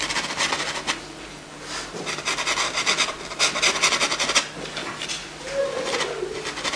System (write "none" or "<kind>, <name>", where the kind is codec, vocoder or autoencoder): none